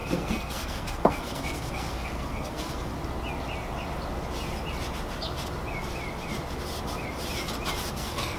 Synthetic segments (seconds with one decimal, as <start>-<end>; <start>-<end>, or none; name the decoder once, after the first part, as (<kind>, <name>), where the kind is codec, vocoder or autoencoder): 0.0-2.9 (codec, SNAC); 7.9-8.4